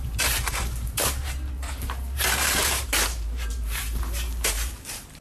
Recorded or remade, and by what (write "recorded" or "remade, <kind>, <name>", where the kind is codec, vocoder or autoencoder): remade, vocoder, BigVGAN v2